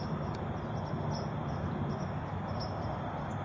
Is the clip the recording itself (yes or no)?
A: yes